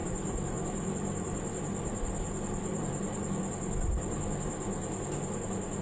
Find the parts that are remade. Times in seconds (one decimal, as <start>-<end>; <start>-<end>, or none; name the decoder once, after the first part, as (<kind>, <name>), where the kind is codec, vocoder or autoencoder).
0.0-3.5 (vocoder, BigVGAN v2)